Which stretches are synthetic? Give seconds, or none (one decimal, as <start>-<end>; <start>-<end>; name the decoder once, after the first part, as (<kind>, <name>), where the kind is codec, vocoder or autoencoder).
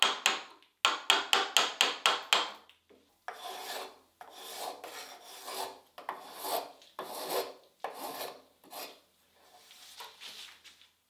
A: none